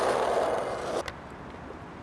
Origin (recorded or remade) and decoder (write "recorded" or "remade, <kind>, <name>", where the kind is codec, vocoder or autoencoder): recorded